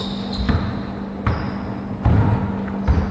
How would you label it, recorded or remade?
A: recorded